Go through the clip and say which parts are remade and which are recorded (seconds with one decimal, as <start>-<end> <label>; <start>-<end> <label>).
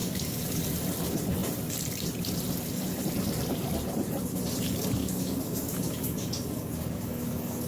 0.0-0.6 remade; 0.6-5.0 recorded; 5.0-7.7 remade